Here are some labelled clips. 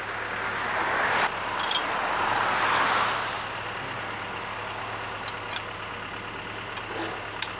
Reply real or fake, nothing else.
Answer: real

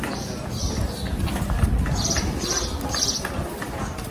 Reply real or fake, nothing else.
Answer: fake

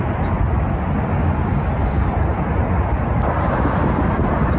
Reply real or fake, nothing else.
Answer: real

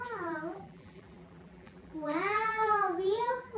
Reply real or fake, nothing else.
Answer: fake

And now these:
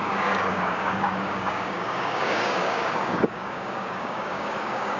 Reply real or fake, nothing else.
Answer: fake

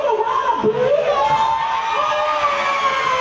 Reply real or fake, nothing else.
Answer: real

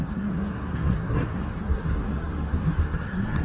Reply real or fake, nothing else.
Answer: fake